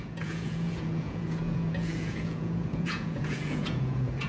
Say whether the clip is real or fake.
fake